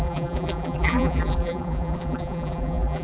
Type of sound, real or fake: fake